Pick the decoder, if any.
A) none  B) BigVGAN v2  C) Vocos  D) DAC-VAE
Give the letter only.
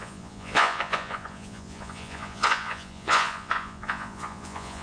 C